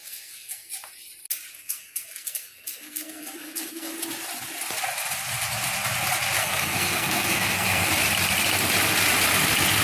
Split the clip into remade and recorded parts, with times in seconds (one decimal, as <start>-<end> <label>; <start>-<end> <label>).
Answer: 0.0-0.7 remade; 0.7-1.5 recorded; 1.5-3.9 remade; 3.9-6.4 recorded; 6.4-7.9 remade; 7.9-9.8 recorded